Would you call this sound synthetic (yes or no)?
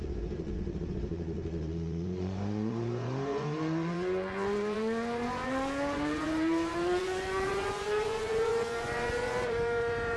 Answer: yes